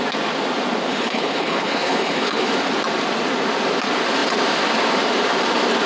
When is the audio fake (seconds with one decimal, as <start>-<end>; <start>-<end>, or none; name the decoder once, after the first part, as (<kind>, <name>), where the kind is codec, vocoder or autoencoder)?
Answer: 0.9-2.5 (codec, HILCodec)